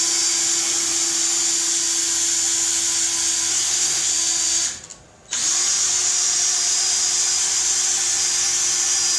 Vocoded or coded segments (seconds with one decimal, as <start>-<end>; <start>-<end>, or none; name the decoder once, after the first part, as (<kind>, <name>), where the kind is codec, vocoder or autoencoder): 3.5-4.1 (codec, SNAC)